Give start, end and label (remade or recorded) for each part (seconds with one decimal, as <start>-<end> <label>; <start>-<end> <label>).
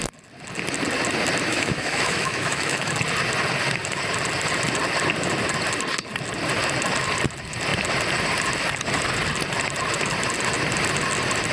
0.0-1.5 recorded; 1.5-2.9 remade; 2.9-11.5 recorded